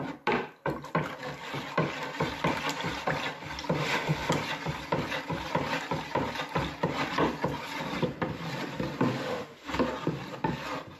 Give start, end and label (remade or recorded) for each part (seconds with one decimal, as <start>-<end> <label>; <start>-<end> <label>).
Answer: 0.0-3.8 recorded; 3.8-4.3 remade; 4.3-9.1 recorded; 9.1-9.7 remade; 9.7-11.0 recorded